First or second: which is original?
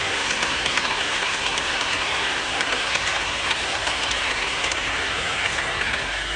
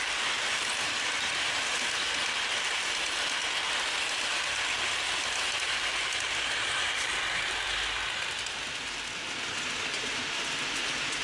second